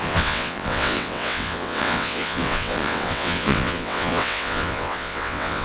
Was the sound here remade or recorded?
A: remade